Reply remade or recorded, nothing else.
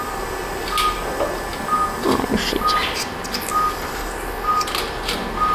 recorded